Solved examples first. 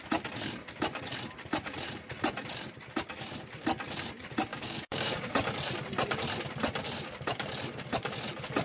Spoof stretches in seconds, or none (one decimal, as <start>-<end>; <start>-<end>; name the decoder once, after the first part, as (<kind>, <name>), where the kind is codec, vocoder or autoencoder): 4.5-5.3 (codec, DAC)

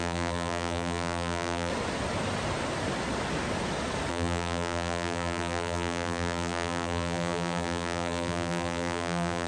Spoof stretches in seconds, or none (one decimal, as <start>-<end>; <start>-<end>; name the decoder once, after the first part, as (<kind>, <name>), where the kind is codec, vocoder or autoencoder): 0.0-1.7 (vocoder, BigVGAN v2); 4.1-9.5

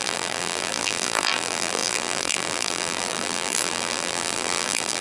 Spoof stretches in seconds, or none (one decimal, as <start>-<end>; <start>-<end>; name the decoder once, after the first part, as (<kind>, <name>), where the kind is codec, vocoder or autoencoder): 0.0-5.0 (vocoder, BigVGAN v2)

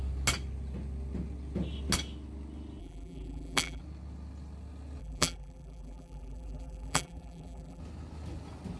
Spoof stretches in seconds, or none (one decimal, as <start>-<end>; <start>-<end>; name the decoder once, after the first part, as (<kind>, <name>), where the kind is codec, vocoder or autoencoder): 2.8-3.8 (vocoder, BigVGAN v2); 5.0-7.8